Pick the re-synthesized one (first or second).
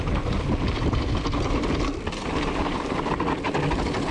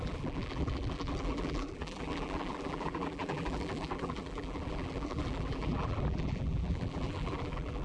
second